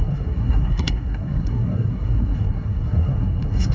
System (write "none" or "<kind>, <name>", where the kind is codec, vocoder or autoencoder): codec, SNAC